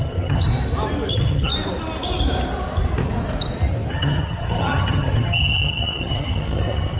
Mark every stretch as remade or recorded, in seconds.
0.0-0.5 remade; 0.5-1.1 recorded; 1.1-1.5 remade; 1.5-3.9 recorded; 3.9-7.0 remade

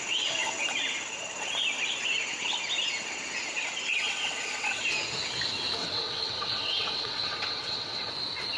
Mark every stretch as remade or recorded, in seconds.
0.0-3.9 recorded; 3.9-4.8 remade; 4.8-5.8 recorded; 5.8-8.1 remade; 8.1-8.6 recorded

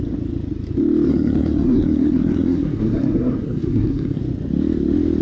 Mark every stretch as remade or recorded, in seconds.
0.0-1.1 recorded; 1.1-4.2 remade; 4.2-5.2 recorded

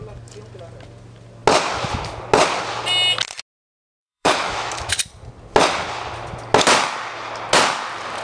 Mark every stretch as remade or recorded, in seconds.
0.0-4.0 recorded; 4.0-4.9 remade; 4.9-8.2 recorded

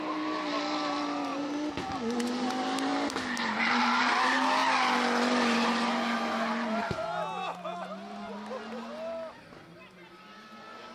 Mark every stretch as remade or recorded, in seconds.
0.0-10.9 recorded

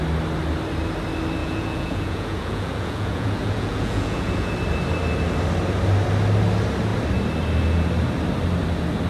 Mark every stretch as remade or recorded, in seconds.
0.0-1.4 recorded; 1.4-4.5 remade; 4.5-9.1 recorded

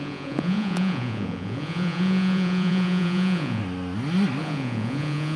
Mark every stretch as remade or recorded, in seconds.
0.0-3.6 remade; 3.6-4.4 recorded; 4.4-5.4 remade